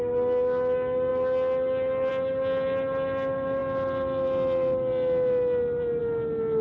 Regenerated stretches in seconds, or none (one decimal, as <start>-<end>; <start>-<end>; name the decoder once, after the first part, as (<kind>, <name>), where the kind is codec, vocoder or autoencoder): none